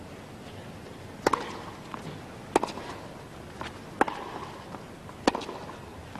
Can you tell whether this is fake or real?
real